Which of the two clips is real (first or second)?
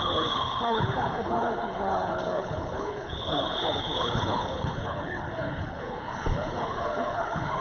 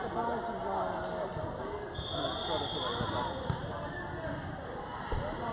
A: second